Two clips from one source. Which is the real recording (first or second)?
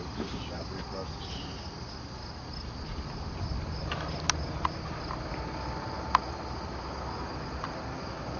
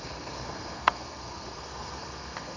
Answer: first